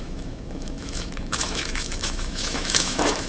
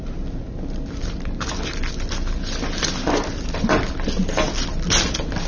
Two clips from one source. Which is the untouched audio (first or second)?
second